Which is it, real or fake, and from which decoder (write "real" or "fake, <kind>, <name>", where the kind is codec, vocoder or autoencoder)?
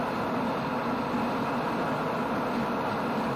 real